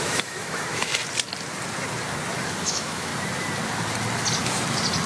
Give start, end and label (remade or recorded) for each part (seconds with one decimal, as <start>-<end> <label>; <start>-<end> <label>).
0.0-0.9 remade; 0.9-2.6 recorded; 2.6-3.1 remade; 3.1-5.1 recorded